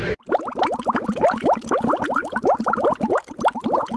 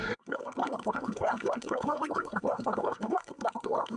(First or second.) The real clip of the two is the first